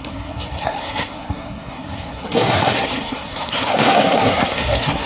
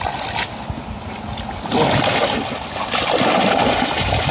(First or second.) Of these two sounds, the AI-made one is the first